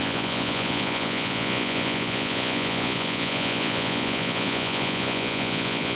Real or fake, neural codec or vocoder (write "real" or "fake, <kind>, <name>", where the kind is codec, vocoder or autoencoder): fake, vocoder, Vocos